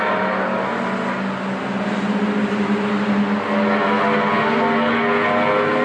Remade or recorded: recorded